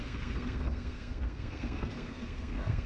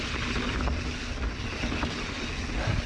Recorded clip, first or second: second